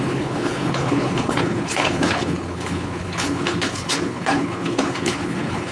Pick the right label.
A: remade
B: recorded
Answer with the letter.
A